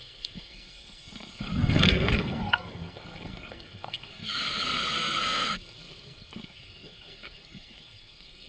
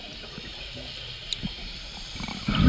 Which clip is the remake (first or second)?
first